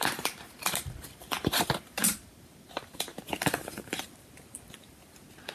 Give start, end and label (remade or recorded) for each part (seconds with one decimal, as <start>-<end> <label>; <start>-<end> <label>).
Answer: 0.0-3.1 remade; 3.1-3.6 recorded; 3.6-5.5 remade